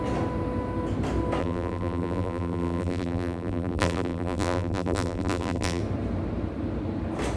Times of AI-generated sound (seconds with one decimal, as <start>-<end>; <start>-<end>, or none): 1.4-5.8